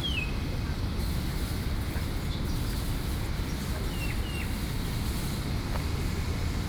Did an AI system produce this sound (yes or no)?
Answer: no